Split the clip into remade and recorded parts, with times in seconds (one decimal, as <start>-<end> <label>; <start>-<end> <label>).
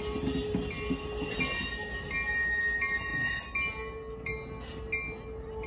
0.0-5.7 recorded